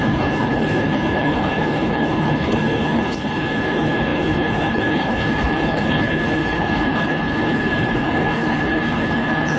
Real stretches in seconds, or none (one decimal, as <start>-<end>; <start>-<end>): none